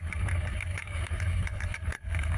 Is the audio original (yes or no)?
no